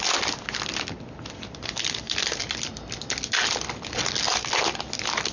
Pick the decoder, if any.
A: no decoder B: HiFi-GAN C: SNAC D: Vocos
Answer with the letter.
A